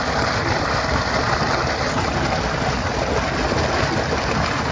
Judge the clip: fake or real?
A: real